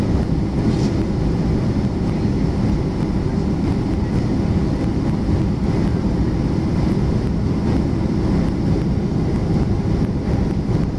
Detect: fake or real real